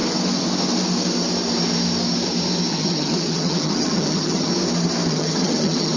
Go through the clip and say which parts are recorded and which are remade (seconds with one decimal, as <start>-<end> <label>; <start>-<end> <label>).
0.0-2.7 recorded; 2.7-4.5 remade; 4.5-5.1 recorded; 5.1-6.0 remade